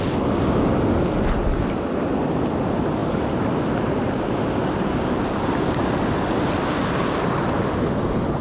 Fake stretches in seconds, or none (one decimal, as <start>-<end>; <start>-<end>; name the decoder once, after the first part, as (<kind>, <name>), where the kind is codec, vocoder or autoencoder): none

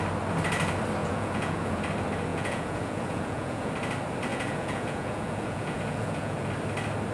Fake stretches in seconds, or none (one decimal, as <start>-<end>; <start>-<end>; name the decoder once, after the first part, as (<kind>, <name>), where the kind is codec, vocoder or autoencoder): 1.0-1.8 (vocoder, Vocos); 2.3-3.7; 4.3-6.5

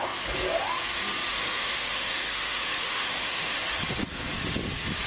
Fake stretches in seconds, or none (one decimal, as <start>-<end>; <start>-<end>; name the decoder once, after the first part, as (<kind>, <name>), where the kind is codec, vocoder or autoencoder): 1.3-3.6 (autoencoder, DAC-VAE)

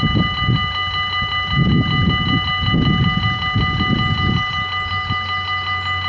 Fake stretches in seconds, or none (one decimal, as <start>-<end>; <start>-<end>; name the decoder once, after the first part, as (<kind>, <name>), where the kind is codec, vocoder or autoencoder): none